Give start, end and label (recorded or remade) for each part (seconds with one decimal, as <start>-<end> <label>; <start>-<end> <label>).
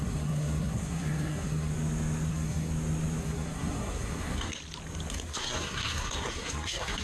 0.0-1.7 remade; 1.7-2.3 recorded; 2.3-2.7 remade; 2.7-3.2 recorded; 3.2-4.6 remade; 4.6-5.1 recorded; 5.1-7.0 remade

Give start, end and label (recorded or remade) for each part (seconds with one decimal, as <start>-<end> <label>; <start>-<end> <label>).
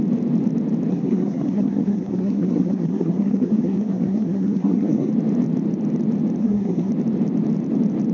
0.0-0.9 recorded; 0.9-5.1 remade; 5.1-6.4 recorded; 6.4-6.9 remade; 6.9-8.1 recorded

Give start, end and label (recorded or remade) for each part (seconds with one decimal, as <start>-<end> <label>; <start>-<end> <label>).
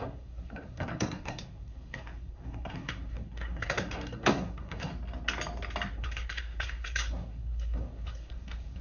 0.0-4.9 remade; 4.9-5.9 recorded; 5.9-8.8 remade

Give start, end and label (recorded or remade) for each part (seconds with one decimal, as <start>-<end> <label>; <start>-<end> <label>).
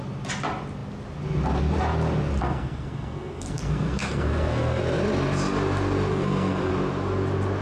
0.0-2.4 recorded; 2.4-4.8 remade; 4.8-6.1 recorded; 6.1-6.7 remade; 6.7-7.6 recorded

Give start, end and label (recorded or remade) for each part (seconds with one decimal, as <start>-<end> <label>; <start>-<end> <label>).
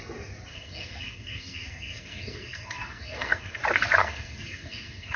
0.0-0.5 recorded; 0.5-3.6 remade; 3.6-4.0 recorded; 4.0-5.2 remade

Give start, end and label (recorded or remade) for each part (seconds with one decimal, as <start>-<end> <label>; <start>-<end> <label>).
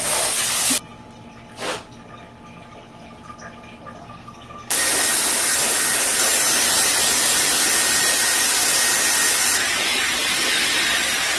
0.0-4.0 recorded; 4.0-4.9 remade; 4.9-11.4 recorded